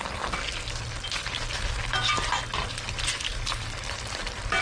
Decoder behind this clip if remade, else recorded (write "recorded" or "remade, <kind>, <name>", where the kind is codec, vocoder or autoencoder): recorded